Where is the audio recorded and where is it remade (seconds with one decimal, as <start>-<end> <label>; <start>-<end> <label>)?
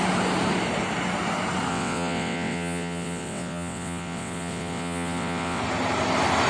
0.0-1.7 recorded; 1.7-5.6 remade; 5.6-6.5 recorded